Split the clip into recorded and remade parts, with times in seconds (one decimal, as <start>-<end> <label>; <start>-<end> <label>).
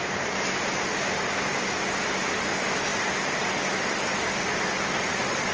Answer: 0.0-5.5 recorded